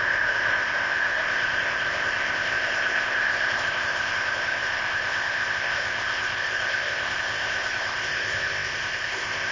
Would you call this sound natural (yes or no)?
no